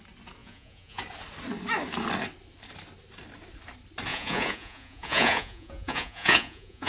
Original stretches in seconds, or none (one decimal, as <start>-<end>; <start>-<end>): 0.0-0.4; 1.0-4.1